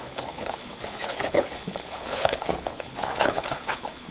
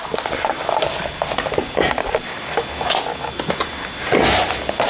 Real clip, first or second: second